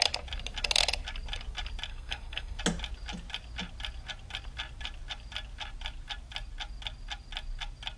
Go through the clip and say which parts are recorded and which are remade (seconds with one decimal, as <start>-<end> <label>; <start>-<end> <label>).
0.0-1.9 recorded; 1.9-2.6 remade; 2.6-8.0 recorded

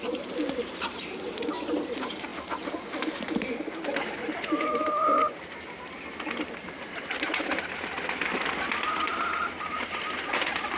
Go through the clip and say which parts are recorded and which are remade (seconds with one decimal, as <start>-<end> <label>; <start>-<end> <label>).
0.0-2.3 remade; 2.3-3.2 recorded; 3.2-5.2 remade; 5.2-10.3 recorded; 10.3-10.8 remade

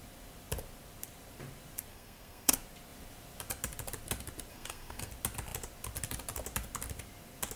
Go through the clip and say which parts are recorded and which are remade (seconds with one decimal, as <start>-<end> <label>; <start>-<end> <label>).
0.0-1.9 recorded; 1.9-2.5 remade; 2.5-4.5 recorded; 4.5-5.1 remade; 5.1-7.6 recorded

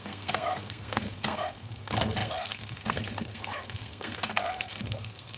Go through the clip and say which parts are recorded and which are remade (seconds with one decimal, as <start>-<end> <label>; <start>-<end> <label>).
0.0-5.4 remade

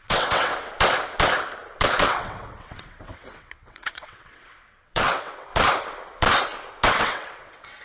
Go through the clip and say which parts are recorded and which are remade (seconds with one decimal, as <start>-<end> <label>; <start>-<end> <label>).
0.0-0.5 remade; 0.5-2.1 recorded; 2.1-5.5 remade; 5.5-7.0 recorded; 7.0-7.8 remade

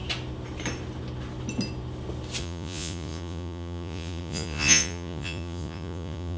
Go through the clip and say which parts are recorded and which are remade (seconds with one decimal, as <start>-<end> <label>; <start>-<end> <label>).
0.0-2.4 recorded; 2.4-6.4 remade

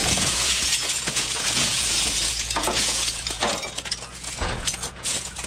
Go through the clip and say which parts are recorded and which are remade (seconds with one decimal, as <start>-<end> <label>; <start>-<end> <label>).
0.0-5.5 remade

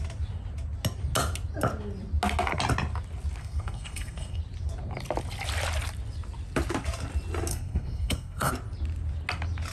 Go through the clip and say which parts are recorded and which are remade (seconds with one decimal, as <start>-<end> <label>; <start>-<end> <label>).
0.0-3.4 recorded; 3.4-4.4 remade; 4.4-7.5 recorded; 7.5-8.5 remade; 8.5-9.7 recorded